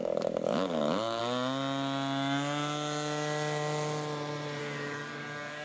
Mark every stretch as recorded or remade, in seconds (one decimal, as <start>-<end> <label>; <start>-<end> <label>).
0.0-1.2 remade; 1.2-4.6 recorded; 4.6-5.6 remade